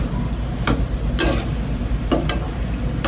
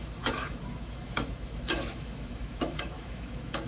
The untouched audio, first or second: first